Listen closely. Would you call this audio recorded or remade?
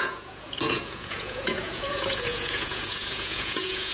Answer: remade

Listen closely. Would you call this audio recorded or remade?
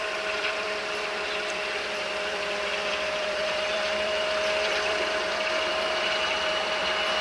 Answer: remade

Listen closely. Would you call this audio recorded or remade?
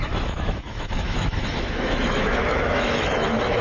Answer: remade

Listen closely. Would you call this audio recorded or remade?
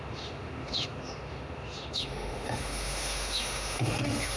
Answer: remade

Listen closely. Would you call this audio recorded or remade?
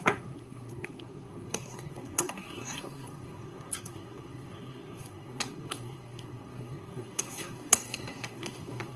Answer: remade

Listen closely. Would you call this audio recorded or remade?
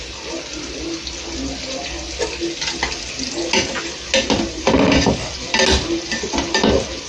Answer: recorded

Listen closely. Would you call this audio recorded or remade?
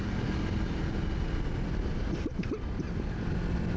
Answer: recorded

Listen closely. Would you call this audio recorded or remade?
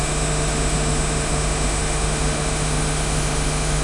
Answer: remade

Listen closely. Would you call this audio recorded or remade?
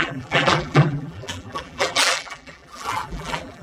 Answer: remade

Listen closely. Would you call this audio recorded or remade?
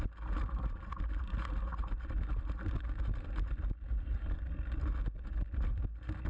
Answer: recorded